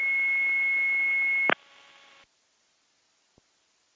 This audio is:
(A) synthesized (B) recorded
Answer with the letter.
B